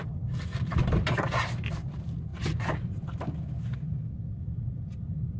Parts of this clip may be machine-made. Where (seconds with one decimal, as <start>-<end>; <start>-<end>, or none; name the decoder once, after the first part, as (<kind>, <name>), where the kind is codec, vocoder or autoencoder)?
none